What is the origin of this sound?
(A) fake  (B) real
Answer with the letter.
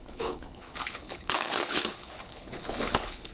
A